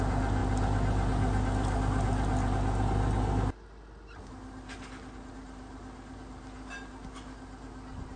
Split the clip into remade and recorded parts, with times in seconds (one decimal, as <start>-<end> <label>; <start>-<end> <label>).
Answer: 0.0-8.2 recorded